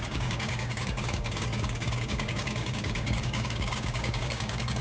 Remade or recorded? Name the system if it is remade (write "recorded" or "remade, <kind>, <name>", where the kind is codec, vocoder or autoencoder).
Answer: remade, codec, DAC